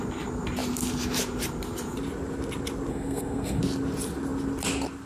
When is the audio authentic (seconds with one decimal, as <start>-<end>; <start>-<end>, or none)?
0.0-2.9; 3.6-5.1